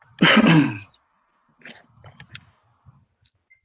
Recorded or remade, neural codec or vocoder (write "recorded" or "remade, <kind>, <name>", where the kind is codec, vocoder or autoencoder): recorded